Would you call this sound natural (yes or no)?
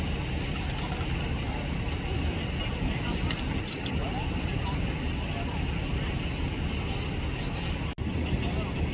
yes